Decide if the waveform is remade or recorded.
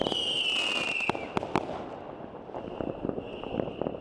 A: recorded